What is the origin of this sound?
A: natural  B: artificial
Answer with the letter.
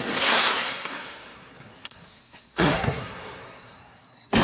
B